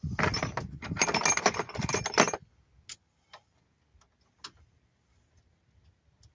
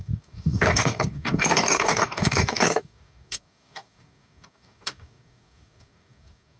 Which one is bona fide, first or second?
first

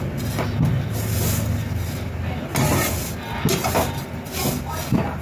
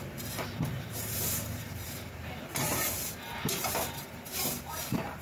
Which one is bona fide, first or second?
first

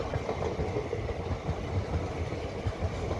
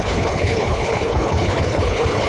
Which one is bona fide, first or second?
first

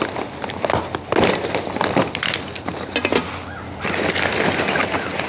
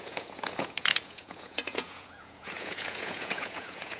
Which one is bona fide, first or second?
first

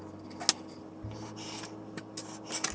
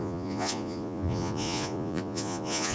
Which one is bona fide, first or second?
first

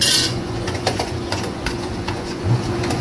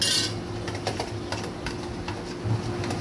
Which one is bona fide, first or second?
second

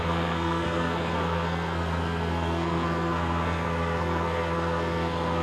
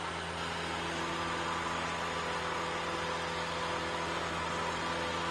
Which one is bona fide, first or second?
second